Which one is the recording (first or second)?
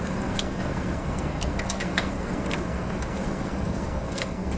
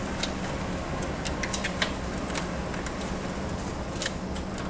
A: second